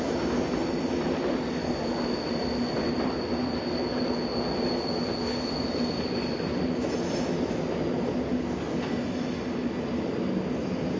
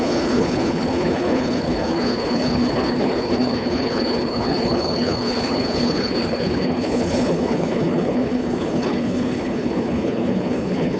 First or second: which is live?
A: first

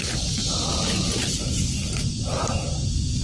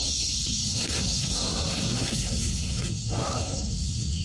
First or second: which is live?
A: first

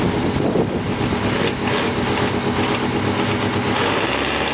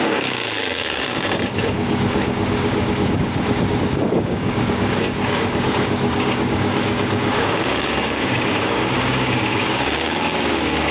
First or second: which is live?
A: first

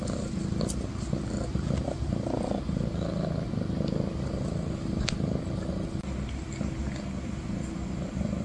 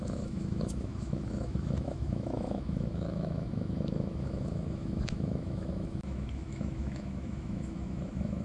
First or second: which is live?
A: first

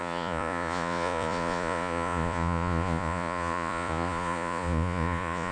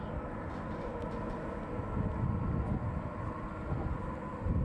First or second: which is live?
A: second